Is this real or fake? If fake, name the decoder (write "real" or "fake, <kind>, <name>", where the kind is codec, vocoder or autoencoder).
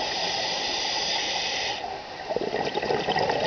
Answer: real